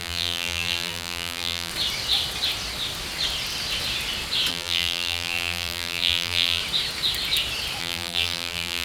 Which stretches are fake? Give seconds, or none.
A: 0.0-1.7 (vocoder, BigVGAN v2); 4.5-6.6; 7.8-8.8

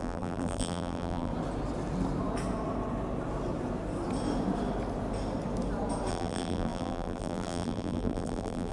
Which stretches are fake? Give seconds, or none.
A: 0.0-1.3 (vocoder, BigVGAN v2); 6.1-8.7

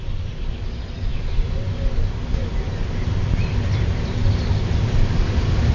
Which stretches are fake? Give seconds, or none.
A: none